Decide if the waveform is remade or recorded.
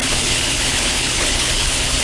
remade